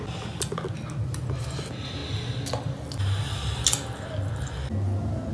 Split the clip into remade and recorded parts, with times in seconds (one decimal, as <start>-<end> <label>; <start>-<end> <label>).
0.0-5.3 recorded